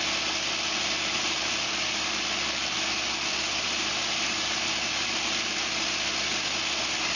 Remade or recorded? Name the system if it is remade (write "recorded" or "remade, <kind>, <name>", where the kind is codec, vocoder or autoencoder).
recorded